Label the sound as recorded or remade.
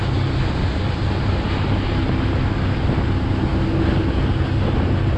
recorded